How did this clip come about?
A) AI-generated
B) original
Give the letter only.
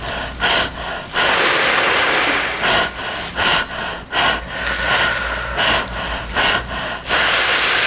B